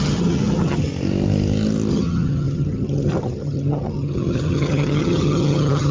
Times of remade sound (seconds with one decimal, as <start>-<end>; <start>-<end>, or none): 0.0-0.9; 1.9-5.9